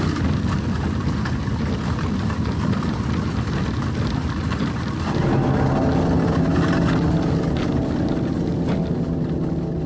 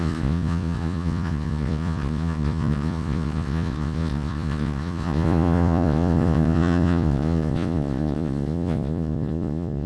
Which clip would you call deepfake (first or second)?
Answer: second